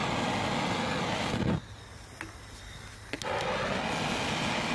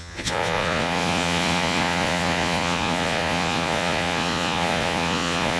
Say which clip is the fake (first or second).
second